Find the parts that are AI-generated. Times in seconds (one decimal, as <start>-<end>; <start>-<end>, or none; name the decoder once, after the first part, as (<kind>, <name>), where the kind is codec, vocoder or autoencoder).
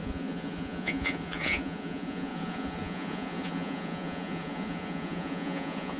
0.0-6.0 (vocoder, Vocos)